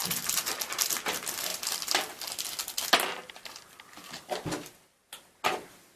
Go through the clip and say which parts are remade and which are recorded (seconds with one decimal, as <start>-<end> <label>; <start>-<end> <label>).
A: 0.0-6.0 recorded